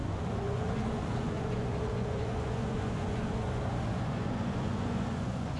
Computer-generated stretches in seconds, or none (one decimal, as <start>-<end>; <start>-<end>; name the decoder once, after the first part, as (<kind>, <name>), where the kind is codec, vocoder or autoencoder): 0.0-5.6 (vocoder, Vocos)